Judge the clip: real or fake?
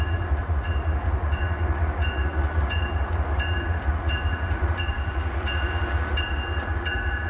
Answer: fake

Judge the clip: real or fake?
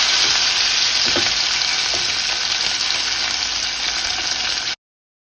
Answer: real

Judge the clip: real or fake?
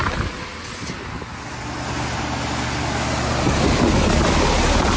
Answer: real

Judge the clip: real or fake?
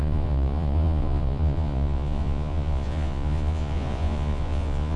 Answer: fake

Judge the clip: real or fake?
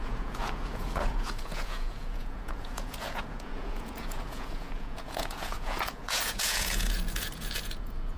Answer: fake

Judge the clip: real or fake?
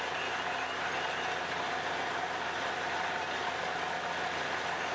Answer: real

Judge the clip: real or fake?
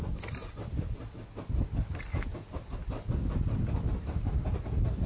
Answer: real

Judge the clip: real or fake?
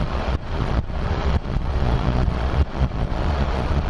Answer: fake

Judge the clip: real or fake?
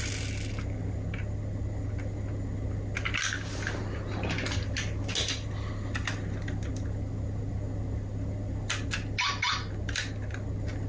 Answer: real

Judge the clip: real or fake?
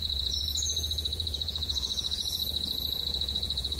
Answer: fake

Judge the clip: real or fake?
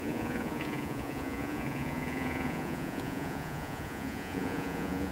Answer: fake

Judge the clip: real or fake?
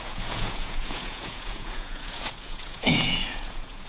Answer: fake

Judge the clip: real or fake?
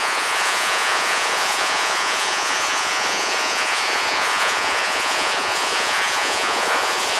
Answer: fake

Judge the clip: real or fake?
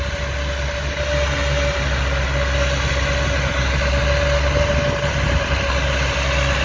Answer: real